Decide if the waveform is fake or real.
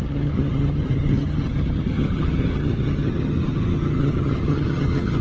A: fake